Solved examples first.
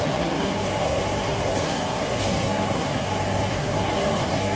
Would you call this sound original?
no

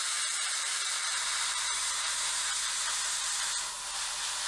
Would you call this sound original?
no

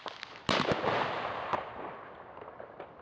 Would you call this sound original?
yes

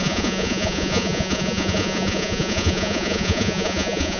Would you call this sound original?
no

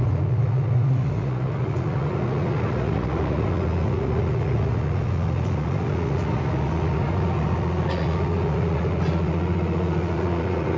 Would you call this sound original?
no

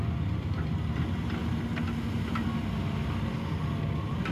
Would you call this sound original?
yes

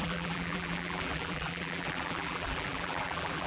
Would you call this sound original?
no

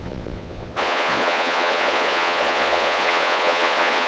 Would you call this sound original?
no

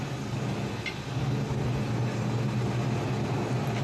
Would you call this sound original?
yes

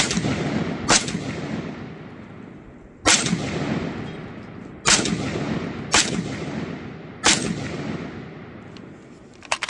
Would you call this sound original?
yes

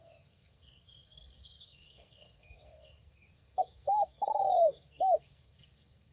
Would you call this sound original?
no